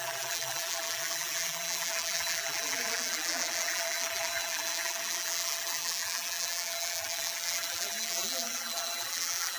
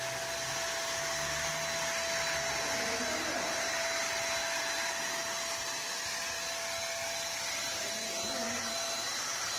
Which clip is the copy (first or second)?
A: first